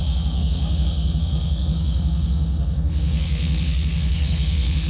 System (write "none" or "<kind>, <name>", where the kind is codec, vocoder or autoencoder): codec, SNAC